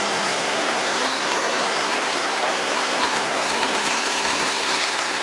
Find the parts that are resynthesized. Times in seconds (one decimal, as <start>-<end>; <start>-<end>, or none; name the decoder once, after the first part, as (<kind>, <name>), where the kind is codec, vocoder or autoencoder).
0.0-5.2 (codec, SNAC)

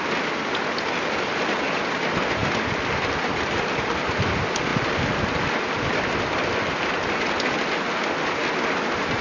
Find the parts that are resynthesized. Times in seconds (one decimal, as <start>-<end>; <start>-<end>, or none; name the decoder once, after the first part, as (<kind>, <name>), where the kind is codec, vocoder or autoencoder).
none